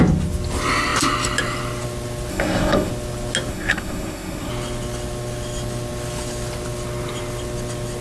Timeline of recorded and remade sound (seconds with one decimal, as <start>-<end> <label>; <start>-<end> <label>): 0.0-2.3 recorded; 2.3-2.9 remade; 2.9-3.5 recorded; 3.5-4.5 remade; 4.5-8.0 recorded

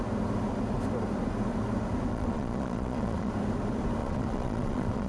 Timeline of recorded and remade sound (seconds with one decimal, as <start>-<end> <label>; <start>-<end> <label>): 0.0-2.1 recorded; 2.1-3.3 remade; 3.3-4.0 recorded; 4.0-5.1 remade

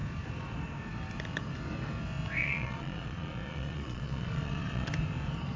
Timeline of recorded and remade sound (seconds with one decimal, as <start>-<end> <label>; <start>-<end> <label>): 0.0-2.4 recorded; 2.4-4.9 remade; 4.9-5.6 recorded

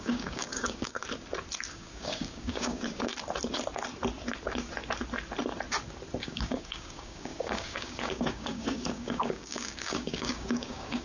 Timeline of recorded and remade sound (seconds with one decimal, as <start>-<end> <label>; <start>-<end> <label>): 0.0-1.0 remade; 1.0-1.7 recorded; 1.7-3.1 remade; 3.1-6.2 recorded; 6.2-11.0 remade

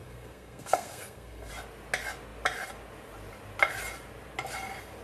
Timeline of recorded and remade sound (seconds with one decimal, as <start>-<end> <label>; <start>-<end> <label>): 0.0-1.5 remade; 1.5-5.0 recorded

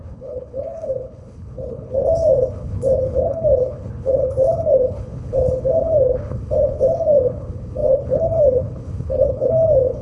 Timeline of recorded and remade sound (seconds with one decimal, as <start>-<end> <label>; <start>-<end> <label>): 0.0-10.0 remade